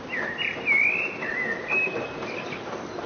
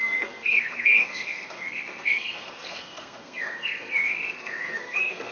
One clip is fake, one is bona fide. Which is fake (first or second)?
second